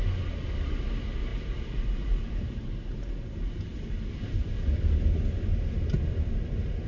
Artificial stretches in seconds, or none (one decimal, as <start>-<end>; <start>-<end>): none